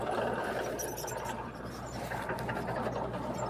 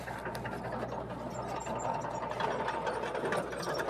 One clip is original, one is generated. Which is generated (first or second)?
first